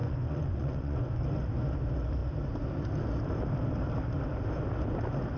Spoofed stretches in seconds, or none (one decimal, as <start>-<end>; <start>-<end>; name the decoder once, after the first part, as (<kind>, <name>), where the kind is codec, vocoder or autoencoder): 0.0-1.2 (vocoder, Vocos)